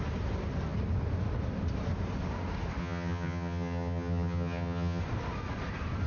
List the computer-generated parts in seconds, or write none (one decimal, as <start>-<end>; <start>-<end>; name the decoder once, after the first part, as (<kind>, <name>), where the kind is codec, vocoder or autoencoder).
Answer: 2.8-5.0 (vocoder, HiFi-GAN)